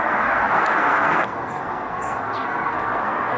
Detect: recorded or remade remade